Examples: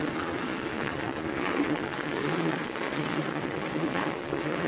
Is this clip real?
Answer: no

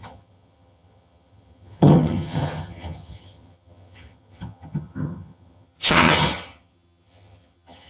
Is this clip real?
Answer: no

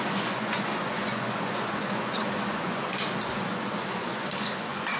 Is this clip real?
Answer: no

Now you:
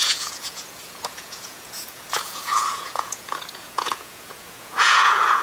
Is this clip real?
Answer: no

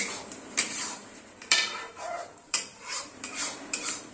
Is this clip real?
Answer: no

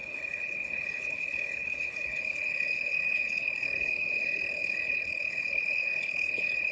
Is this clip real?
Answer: no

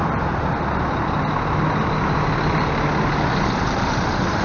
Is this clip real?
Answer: yes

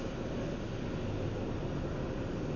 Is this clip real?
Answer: yes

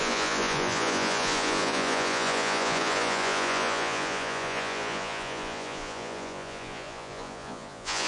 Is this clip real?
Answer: no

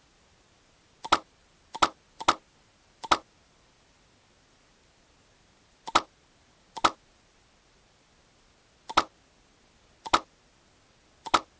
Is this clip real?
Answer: yes